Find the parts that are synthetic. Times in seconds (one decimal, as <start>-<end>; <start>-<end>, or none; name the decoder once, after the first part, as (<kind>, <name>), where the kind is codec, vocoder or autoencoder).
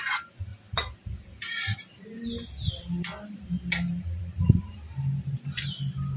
none